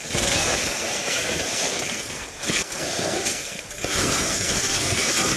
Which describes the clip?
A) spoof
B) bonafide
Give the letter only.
A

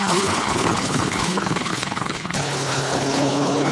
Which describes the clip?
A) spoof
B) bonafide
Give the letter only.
A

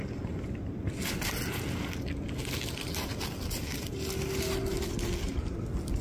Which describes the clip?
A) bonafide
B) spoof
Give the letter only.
A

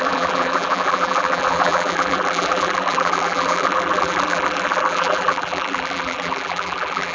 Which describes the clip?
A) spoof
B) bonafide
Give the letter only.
A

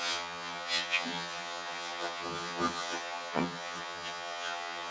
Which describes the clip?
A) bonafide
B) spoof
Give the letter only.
B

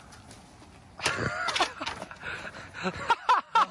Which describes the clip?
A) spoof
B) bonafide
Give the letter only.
B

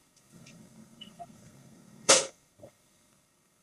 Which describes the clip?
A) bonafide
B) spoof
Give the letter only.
B